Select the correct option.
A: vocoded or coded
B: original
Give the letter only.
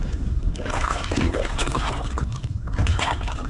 A